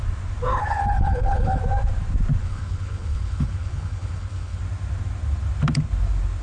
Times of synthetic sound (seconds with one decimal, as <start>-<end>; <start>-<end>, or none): 0.5-1.6; 2.4-4.6